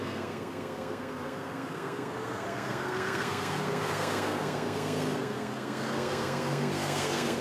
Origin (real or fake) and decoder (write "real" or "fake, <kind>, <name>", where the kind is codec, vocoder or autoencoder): fake, codec, SNAC